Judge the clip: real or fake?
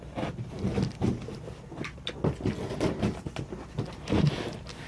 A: real